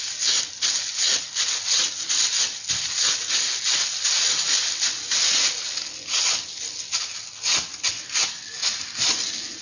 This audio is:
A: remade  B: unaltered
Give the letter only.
B